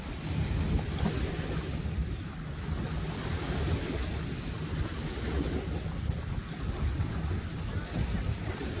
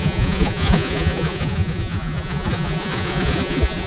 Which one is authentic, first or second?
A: first